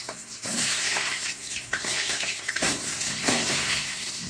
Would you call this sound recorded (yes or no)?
no